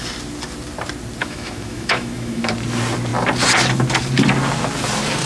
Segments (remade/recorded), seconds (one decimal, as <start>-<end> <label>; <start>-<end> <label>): 0.0-1.2 recorded; 1.2-2.5 remade; 2.5-5.3 recorded